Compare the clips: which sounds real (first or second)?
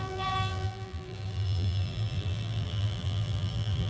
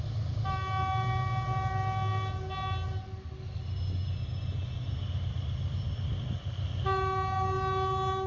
second